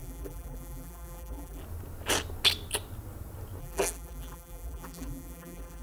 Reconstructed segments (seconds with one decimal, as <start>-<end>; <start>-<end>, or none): 0.0-1.6; 3.6-5.8